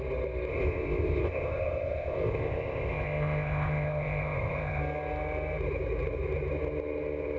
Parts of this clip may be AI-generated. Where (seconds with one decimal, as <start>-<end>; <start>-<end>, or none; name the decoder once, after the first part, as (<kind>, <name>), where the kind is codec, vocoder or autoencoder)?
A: 0.5-4.8 (codec, ZipCodec)